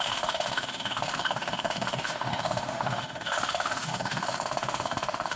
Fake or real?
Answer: fake